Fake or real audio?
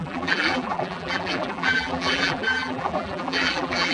fake